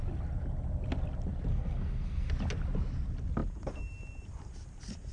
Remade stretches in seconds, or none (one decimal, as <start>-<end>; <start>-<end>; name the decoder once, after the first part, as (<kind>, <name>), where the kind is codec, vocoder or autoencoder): 1.5-2.3 (codec, SNAC)